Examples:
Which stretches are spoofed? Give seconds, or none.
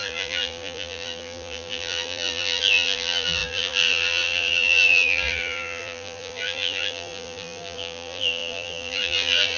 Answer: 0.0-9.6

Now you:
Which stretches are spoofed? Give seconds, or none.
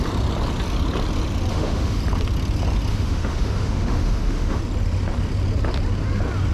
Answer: 1.5-2.0; 2.9-4.6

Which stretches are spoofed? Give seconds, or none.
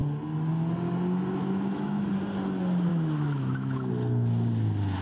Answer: 1.4-2.1; 2.9-3.9